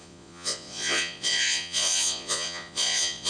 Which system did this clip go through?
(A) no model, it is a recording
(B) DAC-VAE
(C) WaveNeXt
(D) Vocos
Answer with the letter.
D